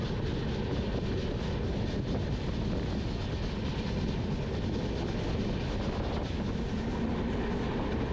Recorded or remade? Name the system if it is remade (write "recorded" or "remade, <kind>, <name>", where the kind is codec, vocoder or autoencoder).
recorded